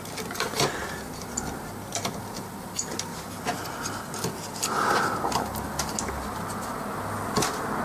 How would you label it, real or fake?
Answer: real